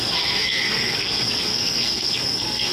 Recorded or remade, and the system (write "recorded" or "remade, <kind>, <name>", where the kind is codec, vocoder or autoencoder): remade, codec, SNAC